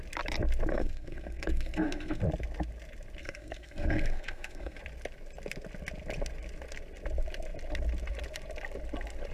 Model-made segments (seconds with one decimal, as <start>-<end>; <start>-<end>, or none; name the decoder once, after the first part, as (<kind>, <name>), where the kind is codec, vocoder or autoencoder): 0.7-2.2 (codec, SNAC); 3.2-4.8